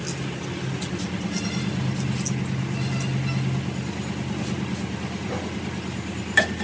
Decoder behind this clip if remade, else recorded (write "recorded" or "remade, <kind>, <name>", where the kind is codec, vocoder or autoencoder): recorded